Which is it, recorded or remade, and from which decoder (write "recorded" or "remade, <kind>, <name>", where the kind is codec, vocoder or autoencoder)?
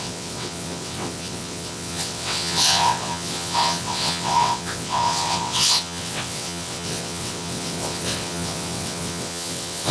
remade, vocoder, WaveNeXt